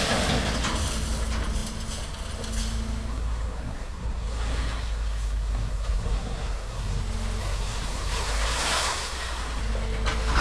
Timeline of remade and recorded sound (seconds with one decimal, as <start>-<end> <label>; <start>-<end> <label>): 0.0-3.1 recorded; 3.1-7.0 remade; 7.0-7.4 recorded; 7.4-9.6 remade; 9.6-10.4 recorded